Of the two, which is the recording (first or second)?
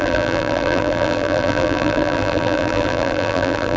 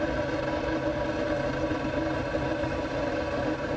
second